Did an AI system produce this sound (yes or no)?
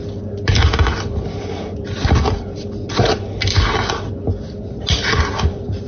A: no